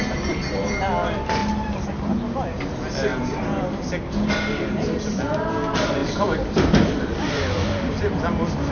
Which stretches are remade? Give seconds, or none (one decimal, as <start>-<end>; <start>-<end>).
3.1-5.2; 6.0-7.9